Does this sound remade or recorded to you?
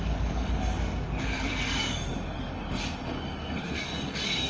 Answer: remade